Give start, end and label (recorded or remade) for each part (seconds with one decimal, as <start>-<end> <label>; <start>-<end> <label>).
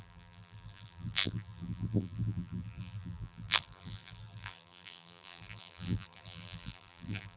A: 0.0-7.4 remade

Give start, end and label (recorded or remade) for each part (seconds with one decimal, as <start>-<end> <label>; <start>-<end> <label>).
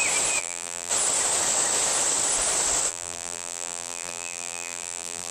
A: 0.0-0.4 recorded; 0.4-0.9 remade; 0.9-2.9 recorded; 2.9-5.3 remade